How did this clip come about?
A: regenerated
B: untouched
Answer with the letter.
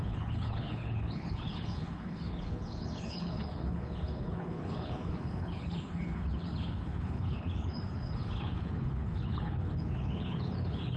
A